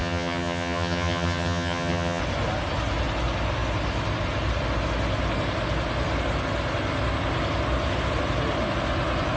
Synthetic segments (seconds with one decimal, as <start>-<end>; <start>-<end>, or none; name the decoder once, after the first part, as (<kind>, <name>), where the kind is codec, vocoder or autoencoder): 0.0-2.2 (vocoder, HiFi-GAN)

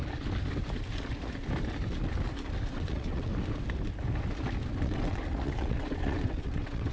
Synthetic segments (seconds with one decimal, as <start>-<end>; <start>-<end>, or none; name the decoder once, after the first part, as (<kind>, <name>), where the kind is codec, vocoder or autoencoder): 2.7-3.3 (vocoder, WaveNeXt); 4.8-6.9

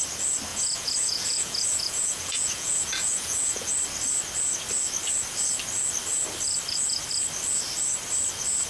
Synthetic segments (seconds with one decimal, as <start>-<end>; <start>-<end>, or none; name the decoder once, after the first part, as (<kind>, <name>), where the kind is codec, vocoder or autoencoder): 0.5-3.7 (vocoder, Vocos)

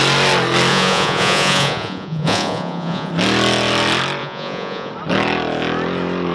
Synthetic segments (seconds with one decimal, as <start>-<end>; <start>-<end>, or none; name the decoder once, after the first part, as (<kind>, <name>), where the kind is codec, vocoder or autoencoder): 0.7-3.1 (vocoder, Vocos); 4.2-4.9

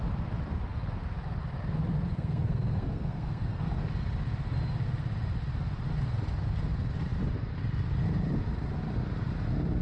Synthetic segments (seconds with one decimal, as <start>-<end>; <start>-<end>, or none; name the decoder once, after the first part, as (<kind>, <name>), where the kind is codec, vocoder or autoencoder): 2.1-3.8 (codec, SNAC)

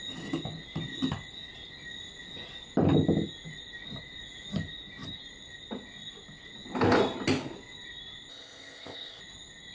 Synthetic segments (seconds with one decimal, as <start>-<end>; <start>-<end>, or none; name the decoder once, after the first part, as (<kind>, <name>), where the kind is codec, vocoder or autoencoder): 8.3-9.2 (codec, ZipCodec)

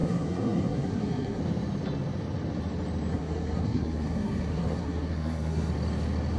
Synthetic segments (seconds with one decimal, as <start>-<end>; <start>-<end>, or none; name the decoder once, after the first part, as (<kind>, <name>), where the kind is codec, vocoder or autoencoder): 0.0-1.4 (codec, SNAC); 3.1-5.7

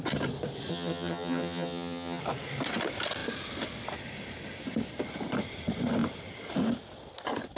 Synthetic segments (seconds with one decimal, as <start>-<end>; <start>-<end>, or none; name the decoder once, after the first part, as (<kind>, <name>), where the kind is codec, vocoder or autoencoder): 0.7-2.2 (vocoder, HiFi-GAN)